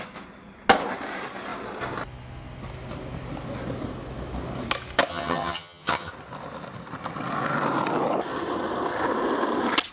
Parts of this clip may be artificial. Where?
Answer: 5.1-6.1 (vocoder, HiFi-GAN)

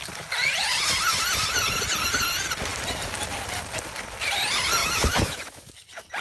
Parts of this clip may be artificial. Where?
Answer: 4.8-5.7 (autoencoder, DAC-VAE)